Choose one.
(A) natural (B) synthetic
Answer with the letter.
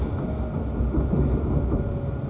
A